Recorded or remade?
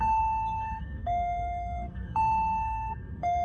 remade